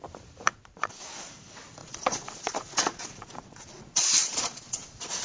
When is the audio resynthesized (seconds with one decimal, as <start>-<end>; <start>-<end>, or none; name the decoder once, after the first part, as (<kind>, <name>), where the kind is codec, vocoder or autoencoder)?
0.5-1.0 (vocoder, Vocos); 1.8-5.2

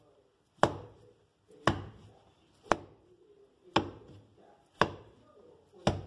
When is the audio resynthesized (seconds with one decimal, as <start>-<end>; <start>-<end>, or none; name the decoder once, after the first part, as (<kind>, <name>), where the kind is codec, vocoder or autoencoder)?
none

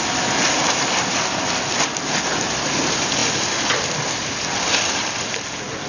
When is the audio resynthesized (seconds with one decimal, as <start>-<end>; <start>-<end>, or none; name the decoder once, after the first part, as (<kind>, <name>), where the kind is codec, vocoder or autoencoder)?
none

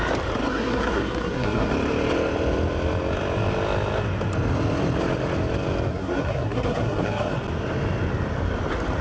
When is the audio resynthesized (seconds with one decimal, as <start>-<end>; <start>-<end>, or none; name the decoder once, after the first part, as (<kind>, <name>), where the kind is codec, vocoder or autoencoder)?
0.5-1.7 (codec, SNAC); 5.9-7.3

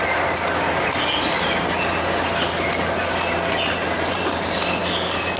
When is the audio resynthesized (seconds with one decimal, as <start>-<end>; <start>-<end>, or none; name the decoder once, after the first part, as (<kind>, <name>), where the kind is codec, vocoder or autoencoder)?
none

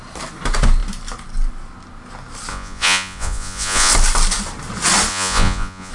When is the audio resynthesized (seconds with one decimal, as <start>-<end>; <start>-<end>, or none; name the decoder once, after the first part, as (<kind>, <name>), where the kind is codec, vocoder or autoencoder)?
2.5-3.9 (vocoder, Vocos); 5.1-5.9

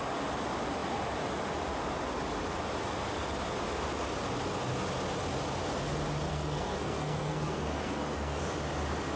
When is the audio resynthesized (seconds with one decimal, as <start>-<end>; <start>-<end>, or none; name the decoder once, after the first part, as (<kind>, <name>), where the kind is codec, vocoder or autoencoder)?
6.3-8.4 (codec, SNAC)

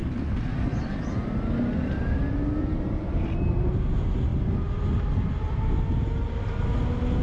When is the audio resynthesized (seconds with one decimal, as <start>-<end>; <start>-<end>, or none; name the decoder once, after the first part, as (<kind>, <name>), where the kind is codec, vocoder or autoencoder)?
none